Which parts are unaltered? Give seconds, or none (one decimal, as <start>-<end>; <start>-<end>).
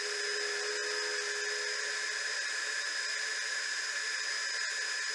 0.0-5.1